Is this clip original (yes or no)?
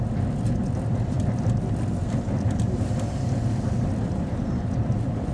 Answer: yes